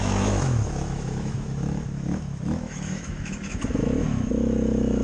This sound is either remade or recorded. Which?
remade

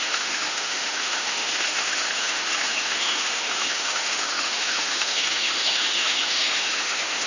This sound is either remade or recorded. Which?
remade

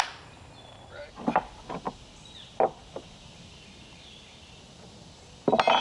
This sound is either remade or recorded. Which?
recorded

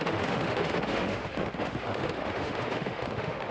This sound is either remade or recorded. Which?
remade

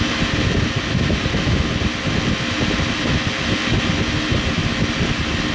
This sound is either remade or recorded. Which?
recorded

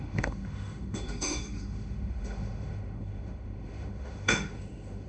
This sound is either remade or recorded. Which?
remade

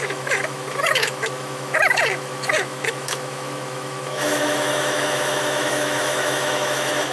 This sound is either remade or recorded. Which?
remade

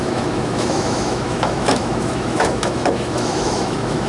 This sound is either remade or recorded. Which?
remade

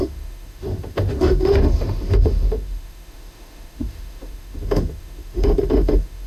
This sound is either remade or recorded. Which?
remade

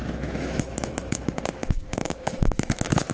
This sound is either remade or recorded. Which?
remade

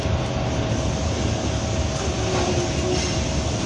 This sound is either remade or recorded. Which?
recorded